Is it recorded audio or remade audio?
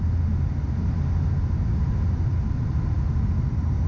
recorded